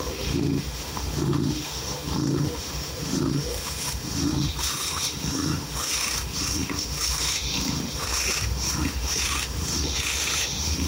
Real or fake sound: fake